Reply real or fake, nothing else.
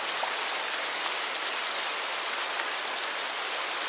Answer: real